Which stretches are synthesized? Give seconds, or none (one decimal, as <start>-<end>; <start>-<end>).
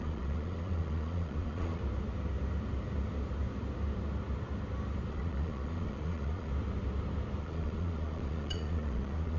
0.0-1.8; 5.1-6.5; 7.4-9.4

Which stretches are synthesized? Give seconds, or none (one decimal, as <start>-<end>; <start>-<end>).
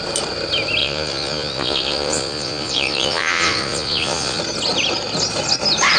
0.8-4.4